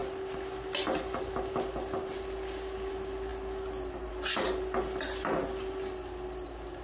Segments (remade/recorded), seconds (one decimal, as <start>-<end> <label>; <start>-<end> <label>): 0.0-6.8 recorded